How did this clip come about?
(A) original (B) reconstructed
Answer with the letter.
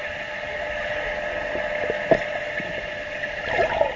A